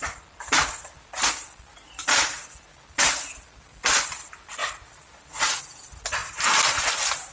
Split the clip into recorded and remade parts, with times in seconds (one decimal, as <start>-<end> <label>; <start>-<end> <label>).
0.0-7.3 recorded